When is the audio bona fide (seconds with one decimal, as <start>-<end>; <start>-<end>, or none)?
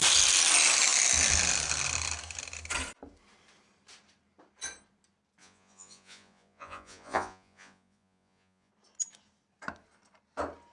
0.0-5.4; 8.7-10.7